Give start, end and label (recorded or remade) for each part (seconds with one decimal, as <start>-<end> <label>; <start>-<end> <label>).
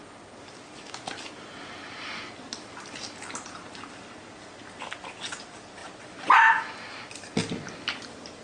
0.0-8.4 recorded